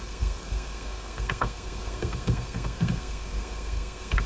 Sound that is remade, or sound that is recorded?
remade